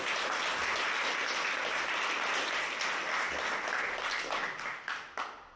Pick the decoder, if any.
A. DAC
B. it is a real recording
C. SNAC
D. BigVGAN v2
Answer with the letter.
B